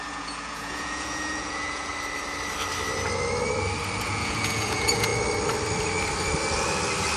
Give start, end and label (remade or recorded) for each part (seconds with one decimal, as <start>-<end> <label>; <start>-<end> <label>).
0.0-1.9 remade; 1.9-4.0 recorded; 4.0-5.1 remade; 5.1-7.2 recorded